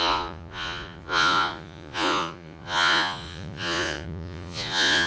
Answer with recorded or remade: remade